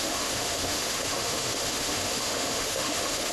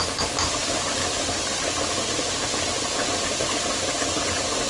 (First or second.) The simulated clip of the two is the first